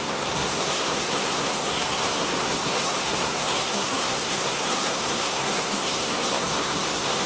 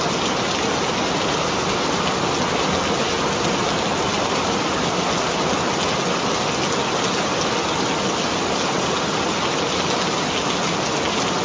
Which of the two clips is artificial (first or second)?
first